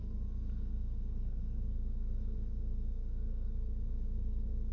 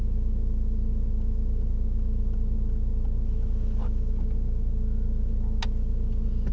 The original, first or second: second